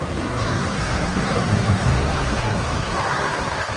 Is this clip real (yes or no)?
no